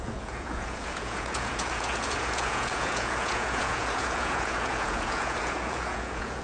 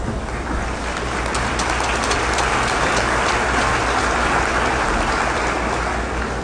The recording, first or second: second